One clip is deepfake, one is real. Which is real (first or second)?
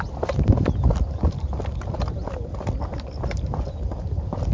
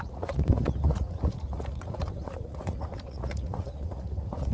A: first